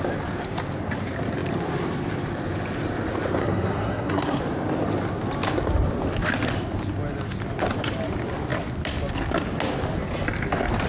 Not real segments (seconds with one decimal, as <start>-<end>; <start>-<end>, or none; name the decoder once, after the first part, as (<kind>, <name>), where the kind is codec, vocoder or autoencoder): 3.4-4.4 (codec, SNAC)

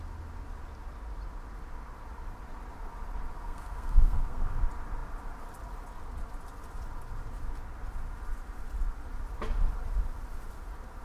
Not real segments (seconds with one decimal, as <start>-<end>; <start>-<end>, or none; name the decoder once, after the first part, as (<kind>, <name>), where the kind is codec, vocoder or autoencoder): 3.3-4.6 (codec, SNAC)